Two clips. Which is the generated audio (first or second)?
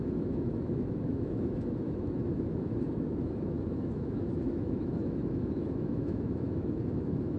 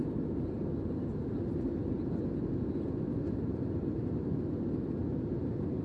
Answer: first